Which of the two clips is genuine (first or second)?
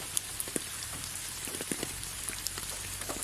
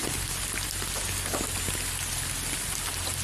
second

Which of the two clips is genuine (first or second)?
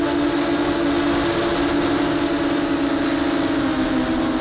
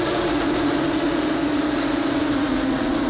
first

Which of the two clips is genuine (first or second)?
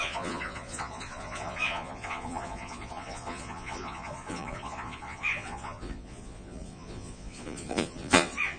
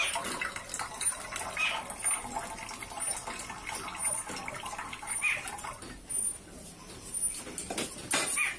second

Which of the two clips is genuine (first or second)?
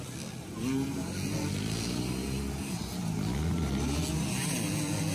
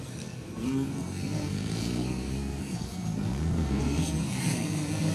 first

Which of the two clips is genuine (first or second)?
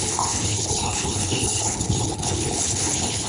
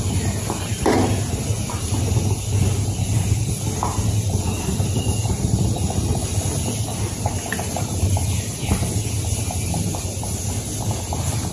second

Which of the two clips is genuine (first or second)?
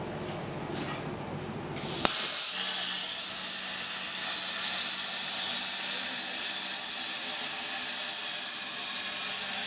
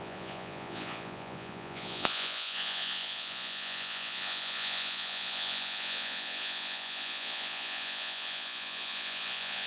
first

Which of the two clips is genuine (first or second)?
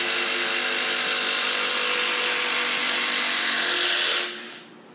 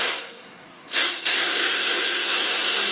first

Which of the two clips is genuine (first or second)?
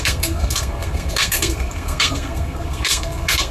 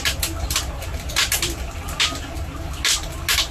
second